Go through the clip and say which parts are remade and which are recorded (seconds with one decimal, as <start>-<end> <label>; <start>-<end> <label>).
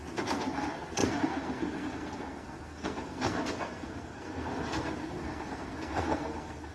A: 0.0-6.7 remade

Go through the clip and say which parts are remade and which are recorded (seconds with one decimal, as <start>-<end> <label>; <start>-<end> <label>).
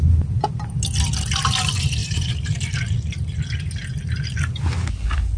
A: 0.0-2.0 recorded; 2.0-2.8 remade; 2.8-5.4 recorded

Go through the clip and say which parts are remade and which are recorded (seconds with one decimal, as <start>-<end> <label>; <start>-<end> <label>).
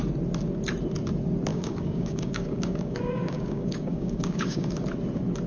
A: 0.0-1.5 recorded; 1.5-4.8 remade; 4.8-5.5 recorded